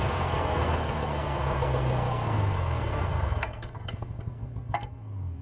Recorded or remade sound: remade